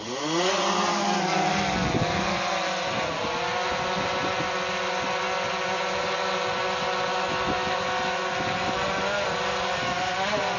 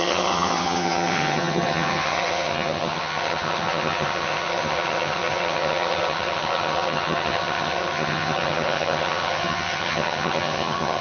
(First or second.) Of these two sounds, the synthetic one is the second